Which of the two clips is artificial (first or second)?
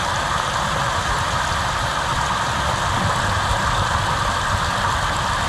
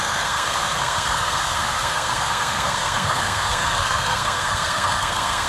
second